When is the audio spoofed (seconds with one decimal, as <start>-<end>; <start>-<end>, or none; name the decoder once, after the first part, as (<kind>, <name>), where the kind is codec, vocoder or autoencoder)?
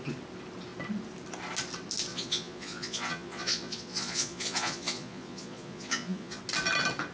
2.1-6.4 (vocoder, Vocos)